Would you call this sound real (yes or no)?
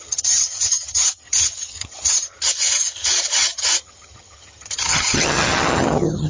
no